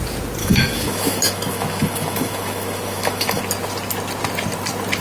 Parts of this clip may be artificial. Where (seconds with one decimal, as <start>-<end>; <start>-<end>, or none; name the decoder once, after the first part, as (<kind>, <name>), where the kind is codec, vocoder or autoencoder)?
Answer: 0.4-3.4 (autoencoder, DAC-VAE)